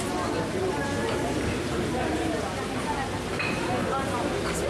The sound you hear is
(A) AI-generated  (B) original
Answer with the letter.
B